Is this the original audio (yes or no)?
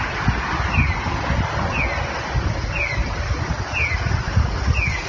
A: yes